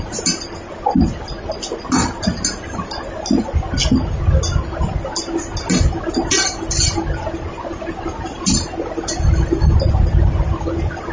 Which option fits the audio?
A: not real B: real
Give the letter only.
B